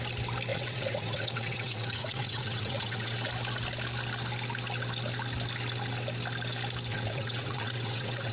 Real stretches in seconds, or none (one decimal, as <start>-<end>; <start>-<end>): 0.0-0.5; 3.3-6.9